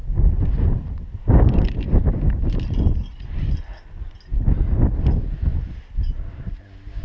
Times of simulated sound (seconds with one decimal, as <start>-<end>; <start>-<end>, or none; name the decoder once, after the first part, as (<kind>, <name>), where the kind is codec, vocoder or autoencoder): none